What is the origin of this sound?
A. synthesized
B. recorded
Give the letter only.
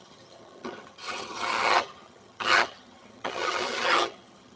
A